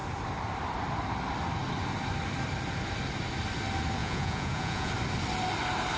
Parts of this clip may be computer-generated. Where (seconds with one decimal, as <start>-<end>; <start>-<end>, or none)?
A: 4.0-4.9